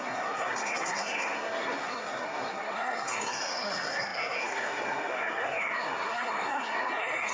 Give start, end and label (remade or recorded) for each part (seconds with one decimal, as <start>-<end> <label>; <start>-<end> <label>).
0.0-7.3 remade